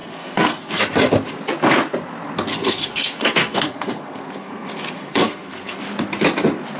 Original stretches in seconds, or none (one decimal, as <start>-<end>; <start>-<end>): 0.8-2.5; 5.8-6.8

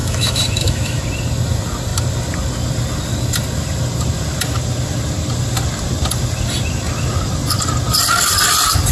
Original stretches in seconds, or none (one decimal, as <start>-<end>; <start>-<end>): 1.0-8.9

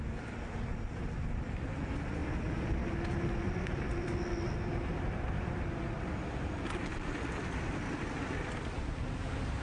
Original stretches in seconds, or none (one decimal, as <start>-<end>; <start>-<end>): 0.0-0.7; 1.7-2.2; 6.5-6.9; 8.8-9.6